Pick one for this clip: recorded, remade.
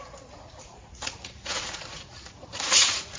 remade